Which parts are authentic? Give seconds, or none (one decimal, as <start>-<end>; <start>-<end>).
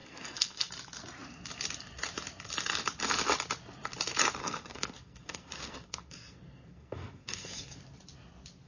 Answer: 0.7-4.4; 7.8-8.7